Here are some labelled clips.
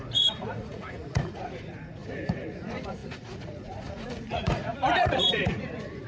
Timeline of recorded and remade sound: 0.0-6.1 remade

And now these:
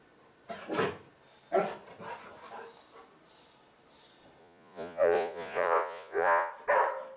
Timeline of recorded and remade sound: 0.0-4.4 recorded; 4.4-6.5 remade; 6.5-7.2 recorded